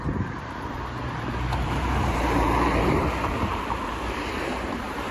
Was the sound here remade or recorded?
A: remade